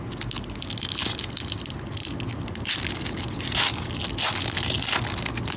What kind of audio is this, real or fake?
real